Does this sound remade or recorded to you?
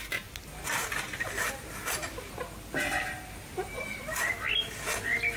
recorded